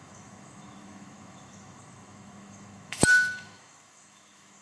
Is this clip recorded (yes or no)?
no